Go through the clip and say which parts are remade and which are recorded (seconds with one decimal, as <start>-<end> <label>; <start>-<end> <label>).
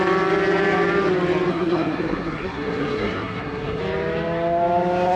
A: 0.0-1.5 recorded; 1.5-3.8 remade; 3.8-5.2 recorded